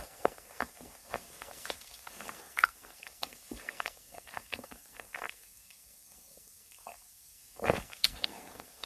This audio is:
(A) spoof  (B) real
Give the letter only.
A